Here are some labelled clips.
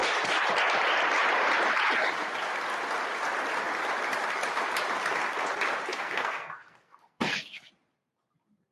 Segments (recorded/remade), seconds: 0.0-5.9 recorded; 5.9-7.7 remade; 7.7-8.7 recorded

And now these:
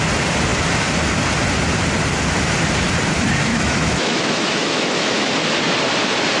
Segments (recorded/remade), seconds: 0.0-3.5 recorded; 3.5-5.3 remade; 5.3-6.4 recorded

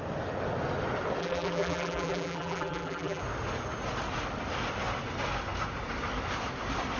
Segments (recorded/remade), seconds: 0.0-1.2 recorded; 1.2-3.2 remade; 3.2-7.0 recorded

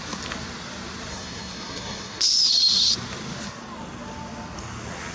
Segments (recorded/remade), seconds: 0.0-1.1 recorded; 1.1-2.2 remade; 2.2-5.1 recorded

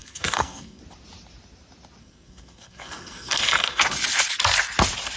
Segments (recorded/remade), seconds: 0.0-0.8 remade; 0.8-2.0 recorded; 2.0-3.8 remade; 3.8-5.2 recorded